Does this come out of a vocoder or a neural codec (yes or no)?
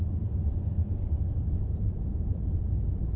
yes